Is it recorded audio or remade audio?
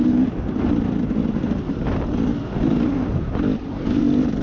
recorded